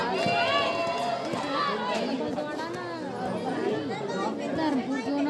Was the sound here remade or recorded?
recorded